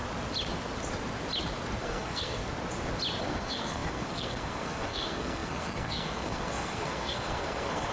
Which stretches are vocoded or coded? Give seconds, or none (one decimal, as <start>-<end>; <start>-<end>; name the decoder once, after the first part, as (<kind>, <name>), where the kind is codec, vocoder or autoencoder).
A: 1.8-2.4 (codec, SNAC); 3.2-7.9